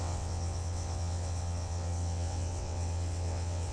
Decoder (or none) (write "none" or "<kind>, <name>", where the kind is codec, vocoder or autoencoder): vocoder, WaveNeXt